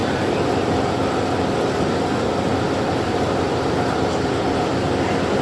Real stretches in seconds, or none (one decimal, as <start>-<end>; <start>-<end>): 0.0-2.5; 4.1-5.4

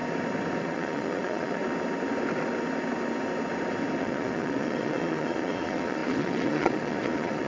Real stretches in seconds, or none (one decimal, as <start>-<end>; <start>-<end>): 0.0-0.6; 1.6-4.0

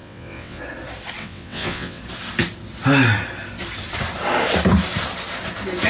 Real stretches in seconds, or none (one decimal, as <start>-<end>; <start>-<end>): 0.6-1.2; 2.0-5.9

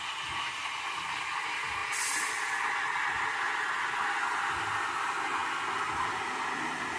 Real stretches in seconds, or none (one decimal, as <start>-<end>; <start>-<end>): 0.0-7.0

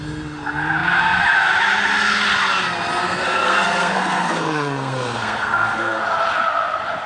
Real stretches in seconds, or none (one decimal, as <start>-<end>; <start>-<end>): 0.0-3.0; 6.0-7.1